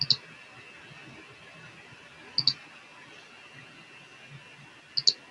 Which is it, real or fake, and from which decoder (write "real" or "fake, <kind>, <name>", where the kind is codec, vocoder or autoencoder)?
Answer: real